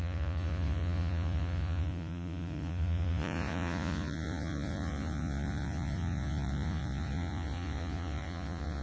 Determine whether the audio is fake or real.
fake